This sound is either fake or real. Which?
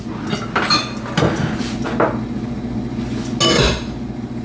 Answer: real